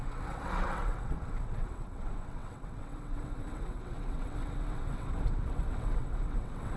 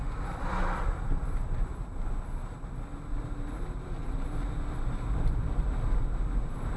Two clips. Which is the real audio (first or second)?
second